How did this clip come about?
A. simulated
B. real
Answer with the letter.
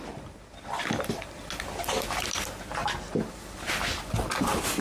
B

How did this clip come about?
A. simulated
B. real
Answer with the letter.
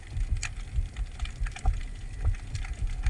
B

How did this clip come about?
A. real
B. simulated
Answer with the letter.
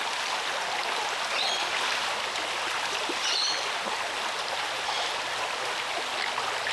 A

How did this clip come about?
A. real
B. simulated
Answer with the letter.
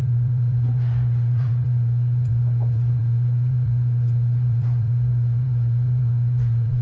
B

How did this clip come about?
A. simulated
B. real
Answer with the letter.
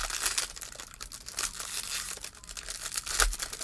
B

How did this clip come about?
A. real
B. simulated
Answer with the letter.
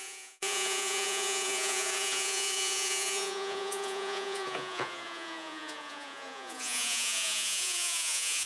B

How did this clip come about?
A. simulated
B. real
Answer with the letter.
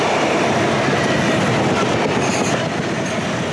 B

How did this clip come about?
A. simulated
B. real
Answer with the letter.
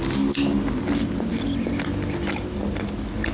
B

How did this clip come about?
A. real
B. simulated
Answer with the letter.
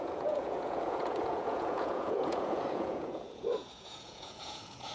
B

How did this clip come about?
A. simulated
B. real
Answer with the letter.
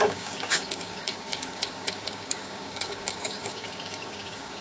A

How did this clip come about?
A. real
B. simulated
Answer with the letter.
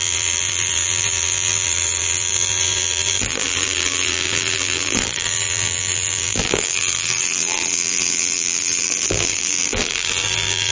B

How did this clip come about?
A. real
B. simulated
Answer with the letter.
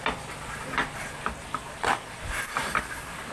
A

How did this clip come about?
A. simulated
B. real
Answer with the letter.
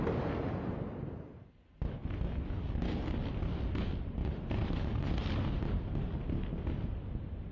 B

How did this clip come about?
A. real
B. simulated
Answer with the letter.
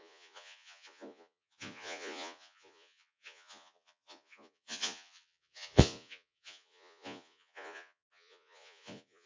B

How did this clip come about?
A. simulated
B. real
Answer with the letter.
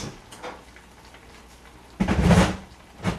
B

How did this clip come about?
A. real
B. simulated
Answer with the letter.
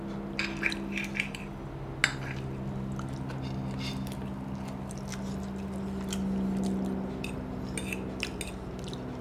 A